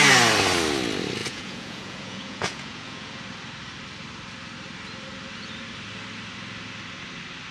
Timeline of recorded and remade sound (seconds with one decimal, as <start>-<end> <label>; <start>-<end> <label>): 0.0-1.2 recorded; 1.2-3.2 remade; 3.2-7.5 recorded